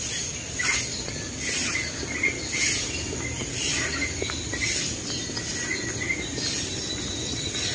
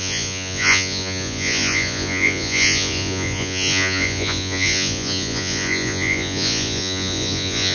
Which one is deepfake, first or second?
second